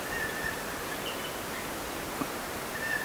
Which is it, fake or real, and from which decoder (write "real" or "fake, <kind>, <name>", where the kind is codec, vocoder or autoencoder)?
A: real